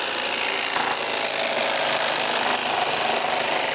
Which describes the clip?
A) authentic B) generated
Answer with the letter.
A